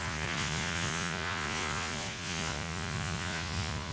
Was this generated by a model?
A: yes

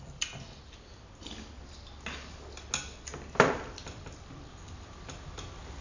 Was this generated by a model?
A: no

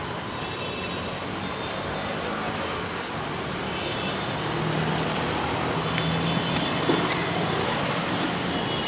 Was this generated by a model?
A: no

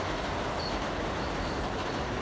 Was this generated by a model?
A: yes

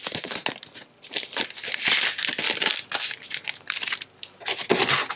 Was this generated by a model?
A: no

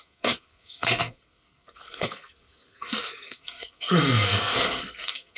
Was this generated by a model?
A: yes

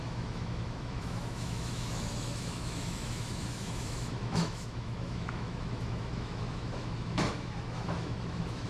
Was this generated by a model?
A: yes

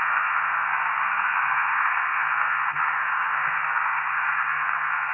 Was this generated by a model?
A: yes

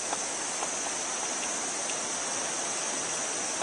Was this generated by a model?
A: no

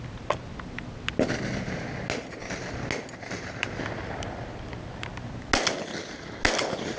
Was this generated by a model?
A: no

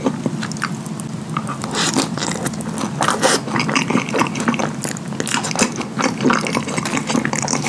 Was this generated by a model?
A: no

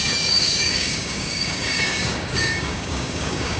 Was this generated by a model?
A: yes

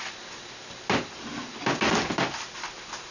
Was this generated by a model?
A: no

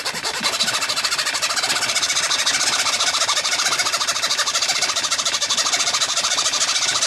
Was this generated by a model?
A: no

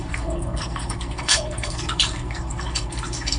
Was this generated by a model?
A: yes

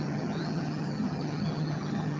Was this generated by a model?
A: yes